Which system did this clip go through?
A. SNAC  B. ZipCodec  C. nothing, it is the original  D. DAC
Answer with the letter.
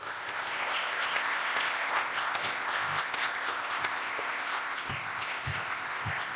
B